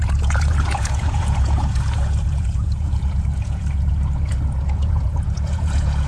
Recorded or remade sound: remade